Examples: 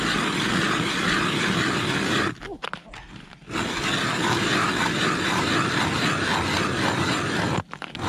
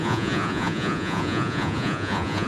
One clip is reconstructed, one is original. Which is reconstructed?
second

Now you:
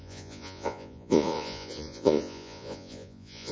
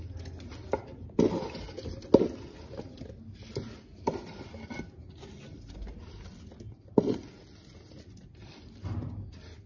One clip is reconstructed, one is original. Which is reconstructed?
first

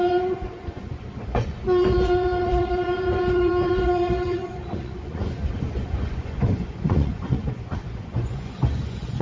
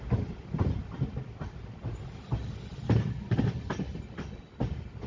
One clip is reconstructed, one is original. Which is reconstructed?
first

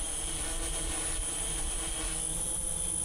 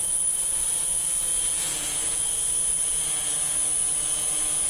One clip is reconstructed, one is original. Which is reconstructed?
second